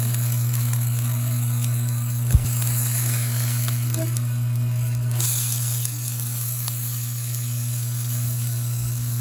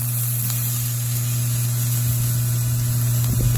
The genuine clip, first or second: second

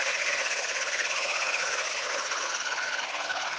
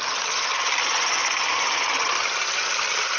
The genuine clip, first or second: second